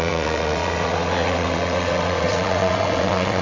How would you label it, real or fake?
fake